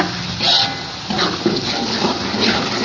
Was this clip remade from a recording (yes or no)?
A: no